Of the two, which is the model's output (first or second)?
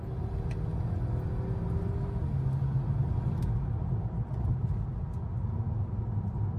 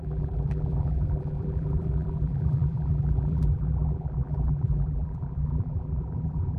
second